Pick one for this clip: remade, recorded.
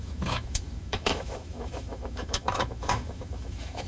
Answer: remade